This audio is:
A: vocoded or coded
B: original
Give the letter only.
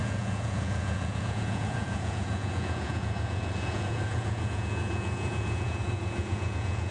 A